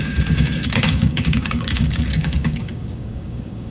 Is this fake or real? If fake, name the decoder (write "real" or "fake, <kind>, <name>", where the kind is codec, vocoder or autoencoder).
fake, codec, DAC